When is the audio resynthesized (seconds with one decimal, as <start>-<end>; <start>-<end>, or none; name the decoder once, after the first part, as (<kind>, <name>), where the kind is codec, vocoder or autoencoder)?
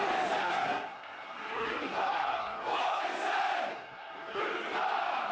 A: 0.4-3.0 (codec, SNAC); 3.7-4.4